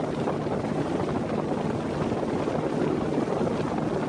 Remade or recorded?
recorded